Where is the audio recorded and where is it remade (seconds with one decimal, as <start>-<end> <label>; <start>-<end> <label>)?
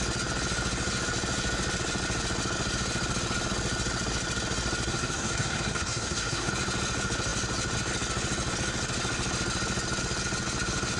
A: 0.0-4.9 recorded; 4.9-6.5 remade; 6.5-11.0 recorded